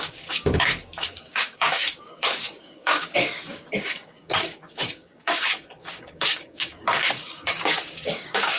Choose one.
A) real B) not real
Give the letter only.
B